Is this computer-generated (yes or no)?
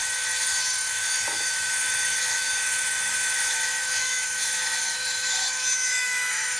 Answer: yes